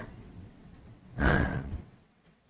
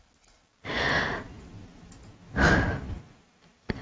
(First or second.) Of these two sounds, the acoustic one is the second